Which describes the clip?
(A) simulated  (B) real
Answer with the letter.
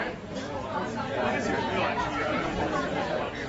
A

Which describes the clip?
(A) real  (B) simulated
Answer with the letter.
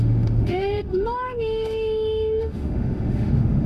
B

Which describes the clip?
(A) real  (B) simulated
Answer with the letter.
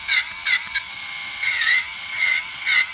B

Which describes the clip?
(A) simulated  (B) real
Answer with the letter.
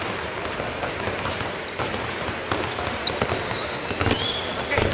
B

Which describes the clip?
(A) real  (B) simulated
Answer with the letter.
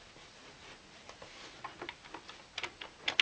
A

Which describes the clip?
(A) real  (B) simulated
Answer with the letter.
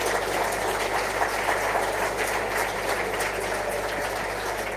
A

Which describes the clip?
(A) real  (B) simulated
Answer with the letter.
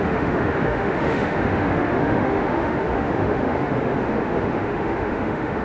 B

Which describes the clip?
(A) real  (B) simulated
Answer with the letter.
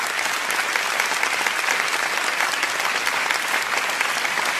A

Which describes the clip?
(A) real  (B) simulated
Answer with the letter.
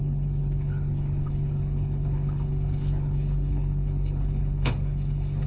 B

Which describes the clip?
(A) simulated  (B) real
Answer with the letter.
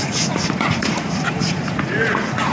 A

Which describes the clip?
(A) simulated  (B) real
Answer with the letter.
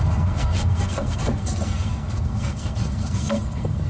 A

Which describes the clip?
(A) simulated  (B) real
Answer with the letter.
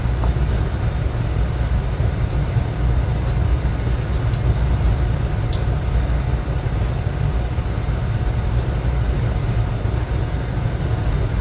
B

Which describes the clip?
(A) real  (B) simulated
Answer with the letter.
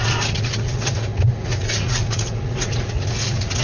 B